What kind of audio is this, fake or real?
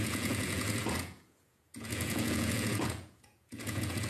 fake